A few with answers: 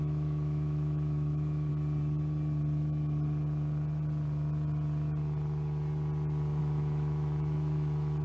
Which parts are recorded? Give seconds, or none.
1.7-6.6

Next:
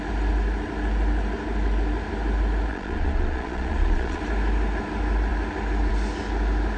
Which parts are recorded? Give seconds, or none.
0.0-2.7; 4.2-6.8

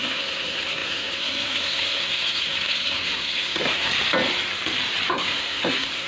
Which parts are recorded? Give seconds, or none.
3.9-5.1

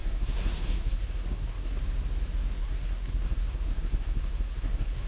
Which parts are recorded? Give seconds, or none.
1.8-2.6

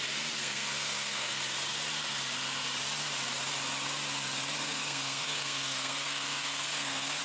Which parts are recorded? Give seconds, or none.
0.0-0.4; 1.4-4.6

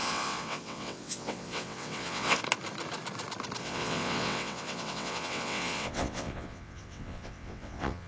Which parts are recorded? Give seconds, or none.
2.4-3.6